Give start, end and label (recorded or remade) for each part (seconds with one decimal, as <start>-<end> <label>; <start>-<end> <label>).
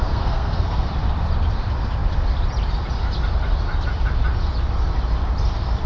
0.0-0.9 remade; 0.9-5.9 recorded